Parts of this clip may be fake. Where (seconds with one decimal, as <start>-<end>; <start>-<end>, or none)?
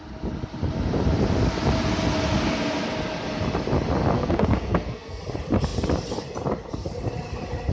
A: 4.1-5.2